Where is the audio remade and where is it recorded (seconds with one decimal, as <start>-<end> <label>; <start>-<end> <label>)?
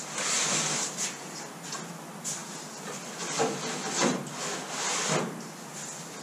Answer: 0.0-6.2 recorded